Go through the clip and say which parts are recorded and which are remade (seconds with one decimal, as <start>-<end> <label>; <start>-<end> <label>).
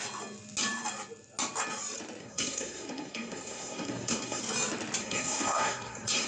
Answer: 0.0-2.2 recorded; 2.2-4.4 remade; 4.4-5.0 recorded; 5.0-6.3 remade